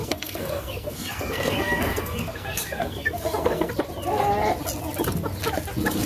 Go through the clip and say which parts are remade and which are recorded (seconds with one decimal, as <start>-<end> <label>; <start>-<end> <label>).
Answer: 0.0-3.7 remade; 3.7-6.1 recorded